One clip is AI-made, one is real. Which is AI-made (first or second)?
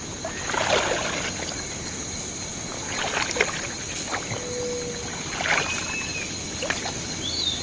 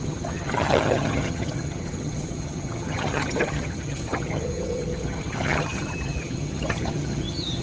second